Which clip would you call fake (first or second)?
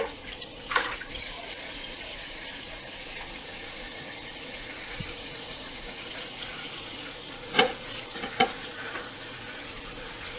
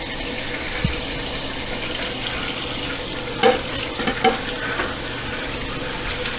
first